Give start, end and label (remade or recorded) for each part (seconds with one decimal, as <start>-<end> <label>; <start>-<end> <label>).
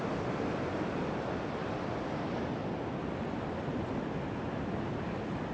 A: 0.0-5.5 recorded